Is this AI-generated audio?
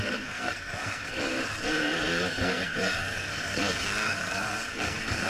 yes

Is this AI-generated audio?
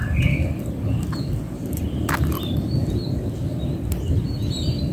yes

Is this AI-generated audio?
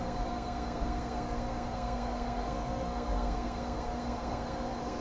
yes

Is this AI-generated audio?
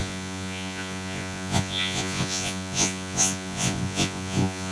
yes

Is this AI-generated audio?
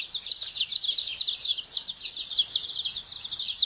no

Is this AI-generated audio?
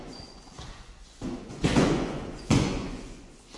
yes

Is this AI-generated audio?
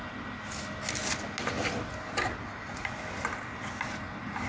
no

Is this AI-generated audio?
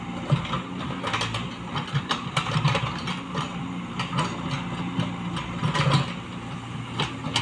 no